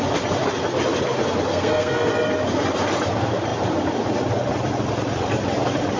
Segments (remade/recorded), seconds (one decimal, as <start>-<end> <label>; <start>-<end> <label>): 0.0-1.5 recorded; 1.5-2.1 remade; 2.1-6.0 recorded